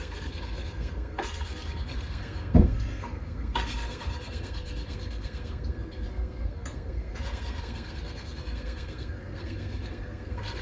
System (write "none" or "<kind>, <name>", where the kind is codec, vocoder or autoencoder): codec, SNAC